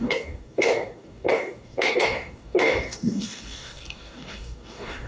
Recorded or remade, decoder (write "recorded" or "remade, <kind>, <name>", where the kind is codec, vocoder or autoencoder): remade, codec, DAC